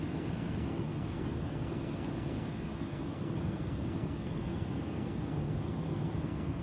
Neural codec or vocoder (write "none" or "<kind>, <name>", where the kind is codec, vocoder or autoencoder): codec, SNAC